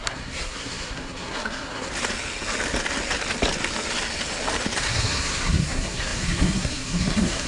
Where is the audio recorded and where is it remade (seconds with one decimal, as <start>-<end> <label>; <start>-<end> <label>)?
0.0-1.9 remade; 1.9-4.8 recorded; 4.8-7.5 remade